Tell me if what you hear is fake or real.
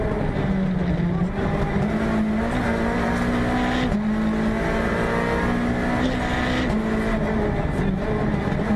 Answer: real